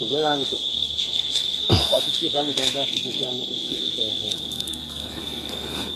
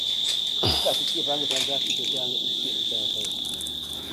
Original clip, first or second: second